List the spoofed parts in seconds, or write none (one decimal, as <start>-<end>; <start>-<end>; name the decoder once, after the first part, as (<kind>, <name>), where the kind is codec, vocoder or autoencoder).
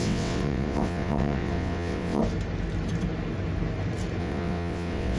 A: 0.0-2.2 (vocoder, WaveNeXt); 4.2-5.2